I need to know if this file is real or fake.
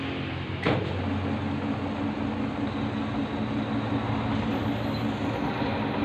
real